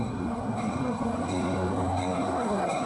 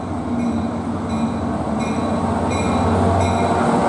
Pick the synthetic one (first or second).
first